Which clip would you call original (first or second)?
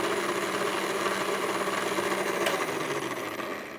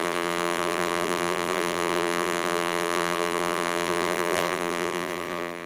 first